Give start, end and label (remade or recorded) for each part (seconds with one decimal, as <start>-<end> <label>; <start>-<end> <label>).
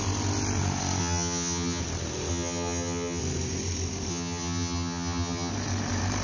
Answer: 0.0-1.0 recorded; 1.0-1.8 remade; 1.8-2.3 recorded; 2.3-3.2 remade; 3.2-4.1 recorded; 4.1-5.5 remade; 5.5-6.2 recorded